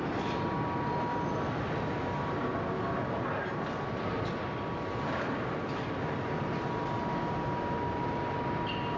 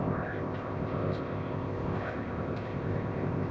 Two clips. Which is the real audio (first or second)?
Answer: first